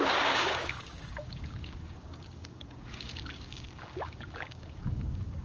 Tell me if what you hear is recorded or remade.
remade